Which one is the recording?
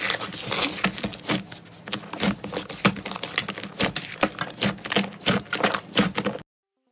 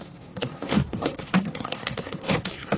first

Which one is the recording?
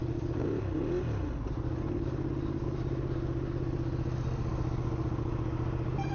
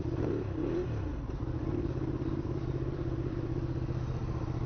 first